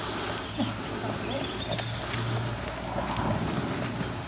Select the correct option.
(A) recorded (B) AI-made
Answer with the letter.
A